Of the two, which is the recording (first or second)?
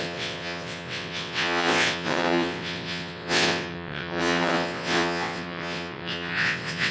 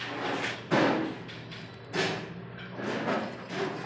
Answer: second